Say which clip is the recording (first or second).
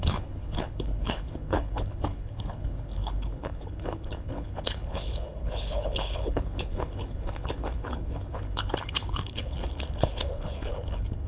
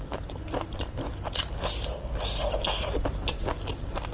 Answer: second